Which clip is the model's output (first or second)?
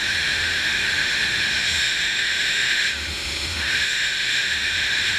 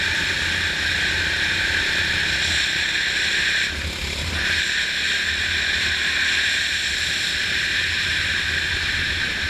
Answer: first